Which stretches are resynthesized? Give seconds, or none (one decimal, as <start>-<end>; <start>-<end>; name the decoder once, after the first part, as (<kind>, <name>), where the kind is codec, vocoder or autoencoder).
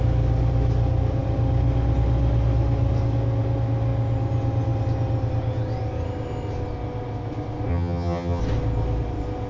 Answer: 7.7-8.4 (vocoder, HiFi-GAN)